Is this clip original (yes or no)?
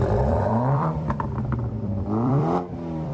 no